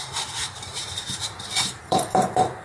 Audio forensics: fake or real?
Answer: fake